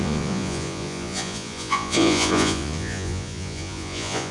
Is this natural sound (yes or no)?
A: no